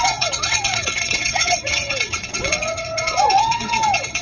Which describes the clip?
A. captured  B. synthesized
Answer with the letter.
B